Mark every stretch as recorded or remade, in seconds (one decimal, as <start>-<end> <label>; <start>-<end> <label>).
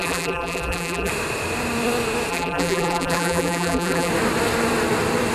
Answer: 0.0-1.1 remade; 1.1-2.3 recorded; 2.3-4.1 remade; 4.1-5.3 recorded